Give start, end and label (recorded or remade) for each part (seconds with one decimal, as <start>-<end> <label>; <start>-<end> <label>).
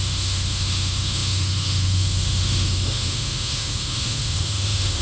0.0-5.0 remade